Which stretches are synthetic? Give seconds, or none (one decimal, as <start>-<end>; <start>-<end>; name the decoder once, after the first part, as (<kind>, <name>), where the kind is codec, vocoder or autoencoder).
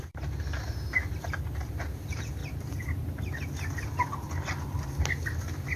none